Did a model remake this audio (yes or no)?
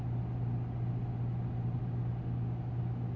no